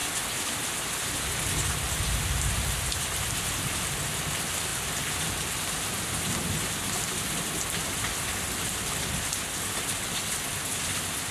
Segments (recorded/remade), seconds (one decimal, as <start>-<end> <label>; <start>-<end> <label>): 0.0-4.7 recorded; 4.7-7.3 remade; 7.3-11.3 recorded